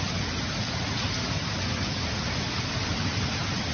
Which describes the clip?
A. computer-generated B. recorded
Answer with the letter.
B